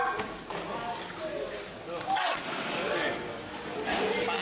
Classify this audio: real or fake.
real